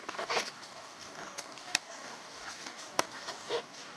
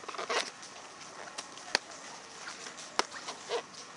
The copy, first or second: first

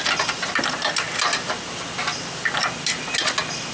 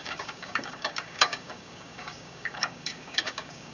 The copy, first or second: second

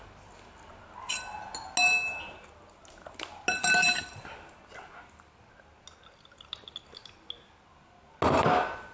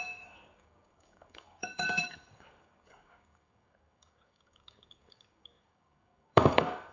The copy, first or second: second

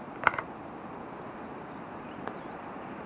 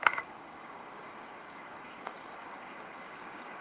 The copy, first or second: second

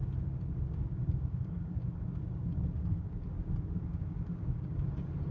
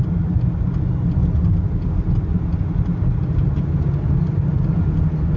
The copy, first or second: first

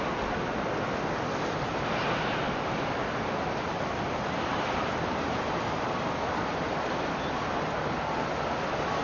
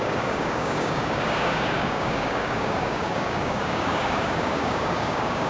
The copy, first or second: second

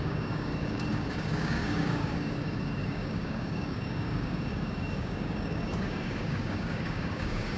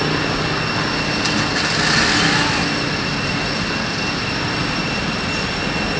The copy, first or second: first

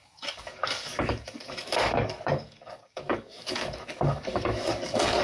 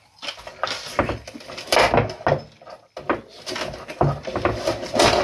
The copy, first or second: first